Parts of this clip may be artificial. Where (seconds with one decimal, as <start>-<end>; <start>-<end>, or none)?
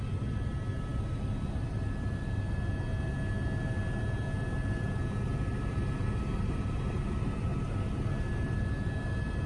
none